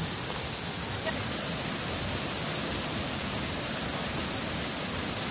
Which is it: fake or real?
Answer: real